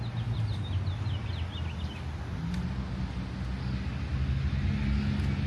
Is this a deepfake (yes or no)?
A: no